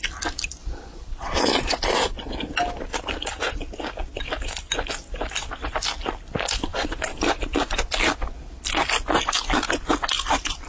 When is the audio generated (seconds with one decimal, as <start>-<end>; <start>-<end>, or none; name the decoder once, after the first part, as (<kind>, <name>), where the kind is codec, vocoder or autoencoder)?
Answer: 0.9-1.8 (vocoder, Vocos)